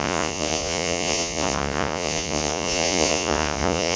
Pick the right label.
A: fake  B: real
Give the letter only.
A